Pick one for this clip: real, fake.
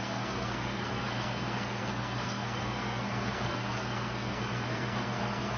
fake